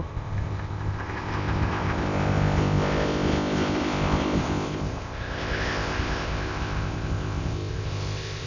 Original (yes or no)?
no